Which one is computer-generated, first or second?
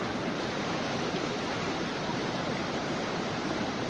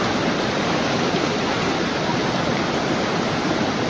first